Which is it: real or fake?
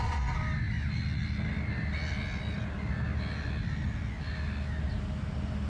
real